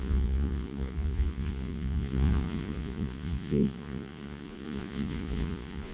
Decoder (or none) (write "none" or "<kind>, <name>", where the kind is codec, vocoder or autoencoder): vocoder, Vocos